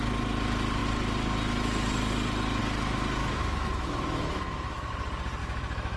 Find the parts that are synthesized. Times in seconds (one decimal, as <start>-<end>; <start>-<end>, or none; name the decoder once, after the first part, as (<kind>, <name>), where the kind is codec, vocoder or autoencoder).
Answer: 3.2-4.9 (autoencoder, DAC-VAE); 5.4-6.0